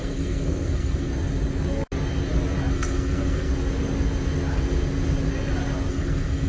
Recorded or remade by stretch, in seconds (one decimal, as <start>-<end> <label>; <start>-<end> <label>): 0.0-1.1 remade; 1.1-2.7 recorded; 2.7-3.5 remade; 3.5-5.9 recorded; 5.9-6.5 remade